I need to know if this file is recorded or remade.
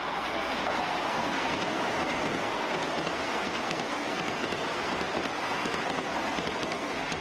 remade